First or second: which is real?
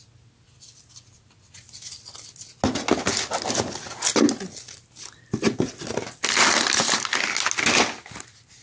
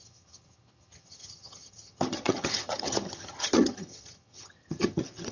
first